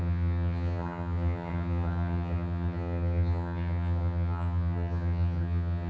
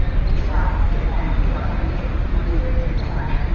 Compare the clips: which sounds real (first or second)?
second